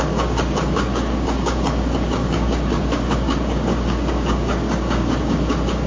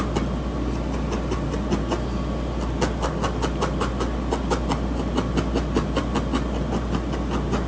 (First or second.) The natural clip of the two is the second